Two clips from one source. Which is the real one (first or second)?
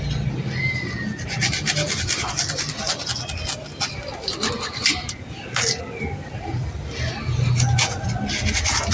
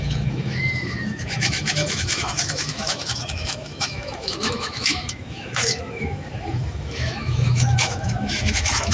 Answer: first